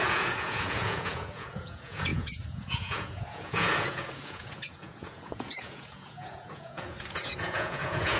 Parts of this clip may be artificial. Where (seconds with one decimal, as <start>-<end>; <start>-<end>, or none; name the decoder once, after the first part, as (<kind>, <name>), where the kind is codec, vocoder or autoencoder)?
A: 0.0-8.2 (vocoder, Vocos)